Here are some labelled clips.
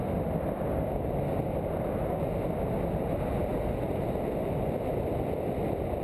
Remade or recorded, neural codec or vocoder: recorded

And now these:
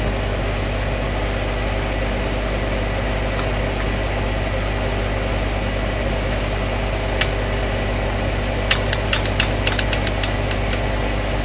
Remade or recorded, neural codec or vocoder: recorded